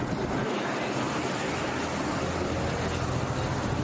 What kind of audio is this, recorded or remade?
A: recorded